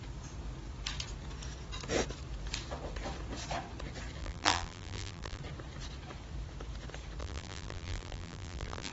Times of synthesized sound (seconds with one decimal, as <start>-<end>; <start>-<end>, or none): 4.2-5.4; 7.2-8.9